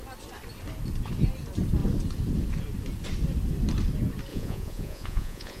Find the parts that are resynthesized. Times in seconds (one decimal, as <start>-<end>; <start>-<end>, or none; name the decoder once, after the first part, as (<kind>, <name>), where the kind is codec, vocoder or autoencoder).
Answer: 4.3-5.6 (vocoder, Vocos)